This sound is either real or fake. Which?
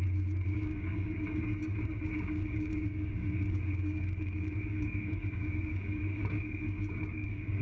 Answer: fake